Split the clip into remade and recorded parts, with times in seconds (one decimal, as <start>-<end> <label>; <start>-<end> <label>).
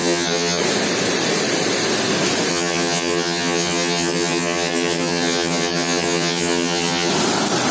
0.0-0.6 remade; 0.6-2.5 recorded; 2.5-7.1 remade; 7.1-7.7 recorded